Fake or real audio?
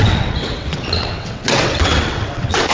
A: fake